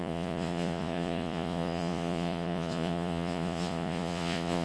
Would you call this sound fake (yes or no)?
yes